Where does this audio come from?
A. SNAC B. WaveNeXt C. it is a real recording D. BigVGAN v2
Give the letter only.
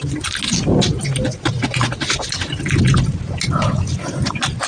C